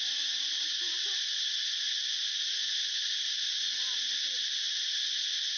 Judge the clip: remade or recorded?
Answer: recorded